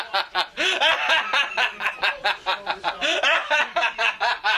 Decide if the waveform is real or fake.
fake